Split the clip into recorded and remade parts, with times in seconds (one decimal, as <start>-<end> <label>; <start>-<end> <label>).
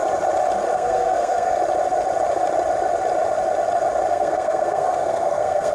0.0-0.7 recorded; 0.7-1.6 remade; 1.6-4.1 recorded; 4.1-5.7 remade